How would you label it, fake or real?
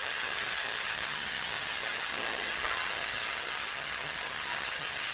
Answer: fake